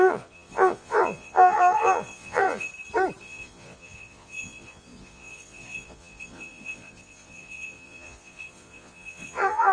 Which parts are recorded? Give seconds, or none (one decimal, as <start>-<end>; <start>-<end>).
2.7-3.2